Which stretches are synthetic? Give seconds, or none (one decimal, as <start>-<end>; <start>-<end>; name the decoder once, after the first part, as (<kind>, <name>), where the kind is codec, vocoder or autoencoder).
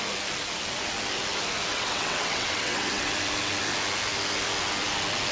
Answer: 1.7-3.1 (vocoder, WaveNeXt)